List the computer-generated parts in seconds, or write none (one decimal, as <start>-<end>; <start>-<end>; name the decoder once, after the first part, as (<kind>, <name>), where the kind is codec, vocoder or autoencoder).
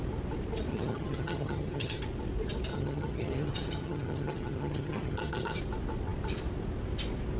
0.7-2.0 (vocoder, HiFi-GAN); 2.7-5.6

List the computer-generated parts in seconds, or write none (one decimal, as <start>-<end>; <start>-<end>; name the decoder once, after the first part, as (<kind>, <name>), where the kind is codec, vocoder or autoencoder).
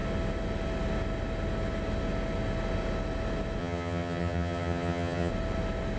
3.6-5.3 (vocoder, HiFi-GAN)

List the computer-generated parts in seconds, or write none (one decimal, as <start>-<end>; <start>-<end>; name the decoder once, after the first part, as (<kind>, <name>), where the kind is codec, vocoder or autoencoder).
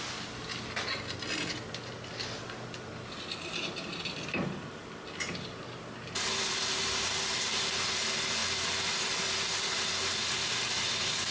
none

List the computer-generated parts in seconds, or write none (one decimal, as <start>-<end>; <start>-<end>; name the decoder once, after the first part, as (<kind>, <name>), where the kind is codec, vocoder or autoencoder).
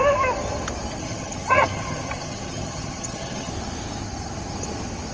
1.0-3.5 (vocoder, HiFi-GAN)